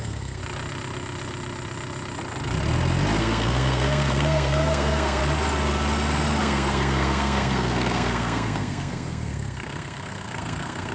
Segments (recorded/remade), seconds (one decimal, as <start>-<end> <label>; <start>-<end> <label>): 0.0-0.4 remade; 0.4-3.2 recorded; 3.2-5.2 remade; 5.2-6.4 recorded; 6.4-10.9 remade

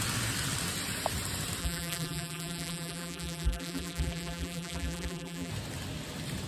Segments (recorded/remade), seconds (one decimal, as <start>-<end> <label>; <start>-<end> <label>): 0.0-1.6 recorded; 1.6-5.5 remade; 5.5-6.5 recorded

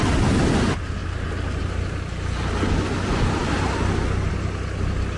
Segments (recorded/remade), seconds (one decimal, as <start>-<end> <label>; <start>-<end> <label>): 0.0-5.2 recorded

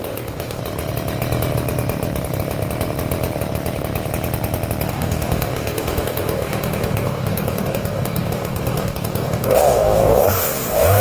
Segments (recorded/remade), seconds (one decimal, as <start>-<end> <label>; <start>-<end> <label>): 0.0-0.6 remade; 0.6-4.9 recorded; 4.9-11.0 remade